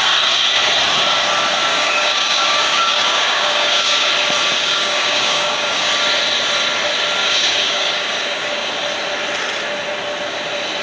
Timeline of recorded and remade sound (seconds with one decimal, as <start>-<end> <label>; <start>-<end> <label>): 0.0-1.7 recorded; 1.7-4.1 remade; 4.1-4.6 recorded; 4.6-5.9 remade; 5.9-7.2 recorded; 7.2-8.7 remade; 8.7-10.8 recorded